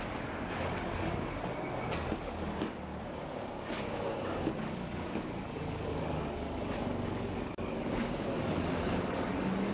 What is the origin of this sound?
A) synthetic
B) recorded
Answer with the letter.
A